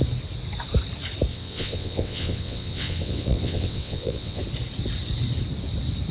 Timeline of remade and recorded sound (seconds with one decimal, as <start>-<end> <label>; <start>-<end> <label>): 0.0-1.3 recorded; 1.3-4.4 remade; 4.4-6.1 recorded